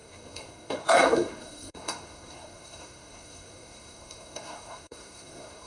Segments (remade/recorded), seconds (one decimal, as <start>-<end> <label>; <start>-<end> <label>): 0.0-5.7 remade

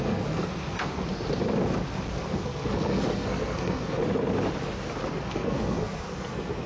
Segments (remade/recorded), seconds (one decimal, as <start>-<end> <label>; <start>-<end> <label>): 0.0-1.0 remade; 1.0-2.1 recorded; 2.1-4.0 remade; 4.0-5.1 recorded; 5.1-6.7 remade

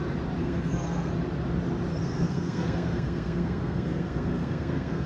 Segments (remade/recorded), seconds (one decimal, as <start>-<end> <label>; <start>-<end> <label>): 0.0-0.4 recorded; 0.4-1.1 remade; 1.1-2.0 recorded; 2.0-5.1 remade

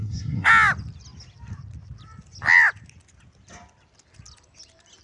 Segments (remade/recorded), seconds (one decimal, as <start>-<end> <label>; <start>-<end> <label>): 0.0-0.5 remade; 0.5-5.0 recorded

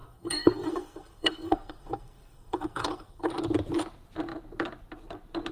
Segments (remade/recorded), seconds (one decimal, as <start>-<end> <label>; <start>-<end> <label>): 0.0-3.3 remade; 3.3-5.5 recorded

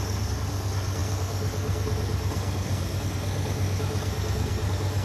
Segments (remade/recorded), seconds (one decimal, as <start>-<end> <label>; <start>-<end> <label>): 0.0-5.0 remade

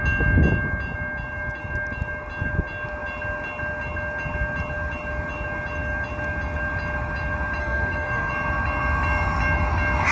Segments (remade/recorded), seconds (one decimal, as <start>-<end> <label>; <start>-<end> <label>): 0.0-7.6 recorded; 7.6-8.3 remade; 8.3-10.1 recorded